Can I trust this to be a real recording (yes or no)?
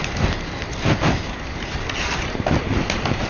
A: yes